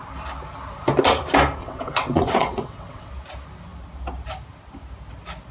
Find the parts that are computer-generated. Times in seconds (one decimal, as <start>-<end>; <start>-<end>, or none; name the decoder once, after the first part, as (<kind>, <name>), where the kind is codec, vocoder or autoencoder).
1.6-3.1 (vocoder, WaveNeXt)